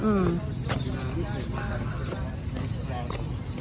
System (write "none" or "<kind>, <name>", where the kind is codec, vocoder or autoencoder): none